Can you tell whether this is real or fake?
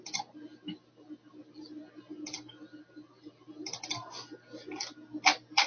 real